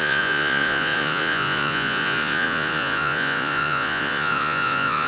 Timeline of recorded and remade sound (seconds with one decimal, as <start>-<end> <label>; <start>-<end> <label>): 0.0-5.1 remade